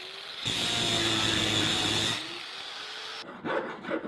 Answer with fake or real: real